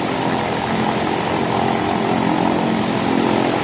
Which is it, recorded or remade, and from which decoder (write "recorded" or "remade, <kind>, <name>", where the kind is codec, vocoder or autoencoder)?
remade, vocoder, BigVGAN v2